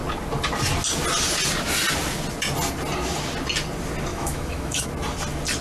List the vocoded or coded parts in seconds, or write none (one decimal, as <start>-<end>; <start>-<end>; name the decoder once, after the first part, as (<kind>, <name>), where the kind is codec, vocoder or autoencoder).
4.1-4.9 (autoencoder, DAC-VAE)